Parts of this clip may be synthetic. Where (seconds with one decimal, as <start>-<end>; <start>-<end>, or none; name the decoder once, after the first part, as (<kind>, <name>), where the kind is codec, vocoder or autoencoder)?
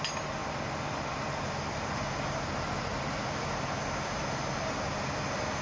none